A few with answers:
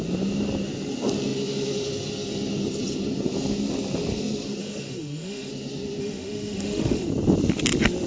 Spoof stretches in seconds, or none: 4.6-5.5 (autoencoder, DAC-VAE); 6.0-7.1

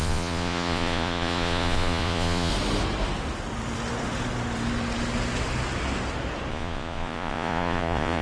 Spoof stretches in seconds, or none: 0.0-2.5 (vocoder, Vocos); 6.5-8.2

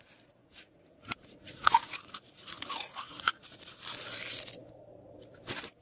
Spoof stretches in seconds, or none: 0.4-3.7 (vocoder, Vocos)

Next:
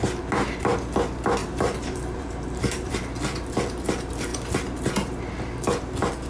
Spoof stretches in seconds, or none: 1.4-2.9 (vocoder, BigVGAN v2)